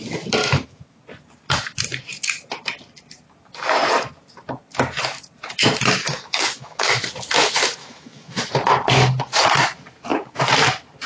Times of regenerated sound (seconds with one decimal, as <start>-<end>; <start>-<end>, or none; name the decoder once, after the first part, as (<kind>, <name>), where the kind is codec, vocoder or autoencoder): 0.4-1.0 (autoencoder, DAC-VAE); 6.0-7.0; 7.8-8.4